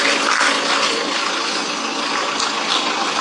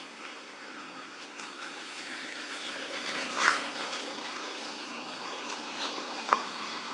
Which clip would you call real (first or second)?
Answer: first